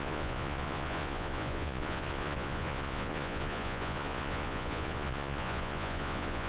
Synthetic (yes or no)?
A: yes